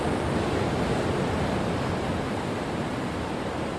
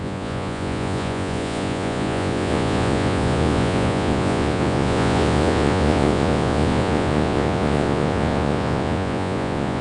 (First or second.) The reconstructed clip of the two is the second